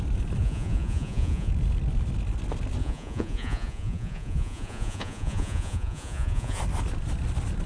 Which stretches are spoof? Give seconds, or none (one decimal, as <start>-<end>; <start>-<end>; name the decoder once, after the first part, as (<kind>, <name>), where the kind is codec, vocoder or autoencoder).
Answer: 0.4-1.5 (vocoder, Vocos); 2.8-6.6